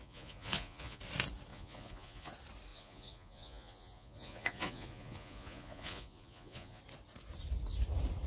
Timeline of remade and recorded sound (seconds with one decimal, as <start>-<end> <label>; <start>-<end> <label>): 0.0-1.0 remade; 1.0-1.5 recorded; 1.5-2.3 remade; 2.3-2.7 recorded; 2.7-6.8 remade; 6.8-8.3 recorded